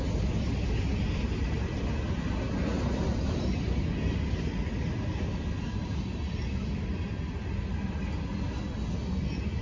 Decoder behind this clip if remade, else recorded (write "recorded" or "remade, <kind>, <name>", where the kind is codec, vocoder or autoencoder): recorded